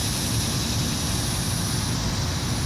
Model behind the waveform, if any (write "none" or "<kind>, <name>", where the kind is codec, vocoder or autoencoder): none